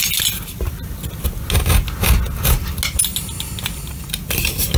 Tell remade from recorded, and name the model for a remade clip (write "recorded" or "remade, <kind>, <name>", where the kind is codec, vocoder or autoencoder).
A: recorded